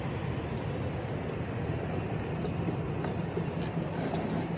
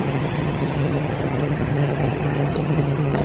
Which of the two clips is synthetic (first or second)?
second